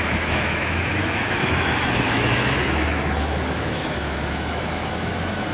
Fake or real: fake